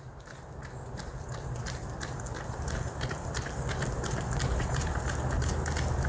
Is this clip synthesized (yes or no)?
no